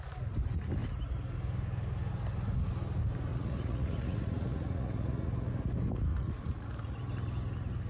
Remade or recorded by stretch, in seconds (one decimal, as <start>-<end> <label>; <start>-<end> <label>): 0.0-3.3 recorded; 3.3-5.5 remade; 5.5-6.1 recorded; 6.1-7.0 remade; 7.0-7.9 recorded